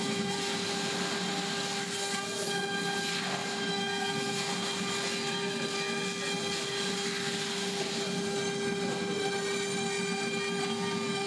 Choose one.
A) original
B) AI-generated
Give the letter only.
A